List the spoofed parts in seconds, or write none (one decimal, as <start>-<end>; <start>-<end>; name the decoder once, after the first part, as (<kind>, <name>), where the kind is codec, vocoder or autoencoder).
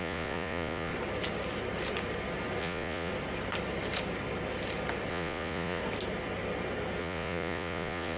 0.0-0.9 (vocoder, Vocos); 2.6-3.1; 5.1-5.8; 7.0-8.2